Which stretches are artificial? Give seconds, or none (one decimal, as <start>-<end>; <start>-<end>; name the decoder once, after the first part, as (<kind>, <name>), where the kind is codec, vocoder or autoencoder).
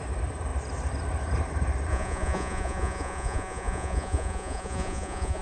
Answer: 1.9-5.4 (vocoder, Vocos)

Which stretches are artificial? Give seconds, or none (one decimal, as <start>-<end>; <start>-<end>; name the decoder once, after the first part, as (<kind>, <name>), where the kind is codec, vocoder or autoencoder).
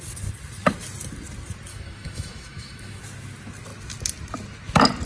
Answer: 1.7-3.0 (autoencoder, DAC-VAE)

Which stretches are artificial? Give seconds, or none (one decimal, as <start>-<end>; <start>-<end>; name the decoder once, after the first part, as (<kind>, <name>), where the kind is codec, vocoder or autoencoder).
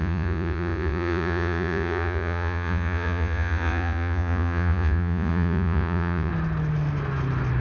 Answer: 0.0-6.3 (vocoder, Vocos)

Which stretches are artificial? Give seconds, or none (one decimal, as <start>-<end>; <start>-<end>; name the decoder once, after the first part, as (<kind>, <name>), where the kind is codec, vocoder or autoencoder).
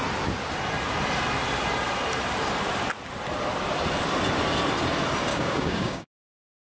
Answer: 5.3-6.3 (codec, DAC)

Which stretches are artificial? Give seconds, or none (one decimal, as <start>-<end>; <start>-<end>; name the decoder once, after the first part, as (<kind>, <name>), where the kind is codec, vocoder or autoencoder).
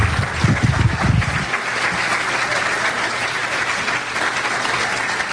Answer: none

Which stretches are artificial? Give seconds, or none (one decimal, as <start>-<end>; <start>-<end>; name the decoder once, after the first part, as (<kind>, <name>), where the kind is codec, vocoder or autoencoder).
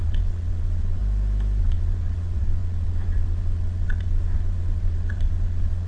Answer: 0.0-1.0 (vocoder, Vocos); 1.6-5.9